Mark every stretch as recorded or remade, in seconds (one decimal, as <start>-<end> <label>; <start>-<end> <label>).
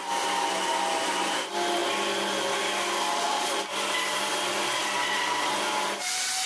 0.0-3.1 recorded; 3.1-3.6 remade; 3.6-6.5 recorded